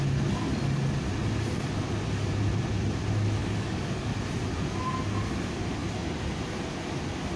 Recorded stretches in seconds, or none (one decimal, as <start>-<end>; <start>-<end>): 0.0-3.4; 4.3-7.4